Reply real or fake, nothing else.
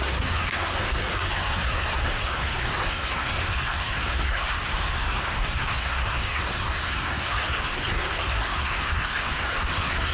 fake